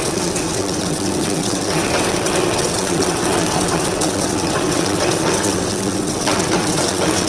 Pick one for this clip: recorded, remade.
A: remade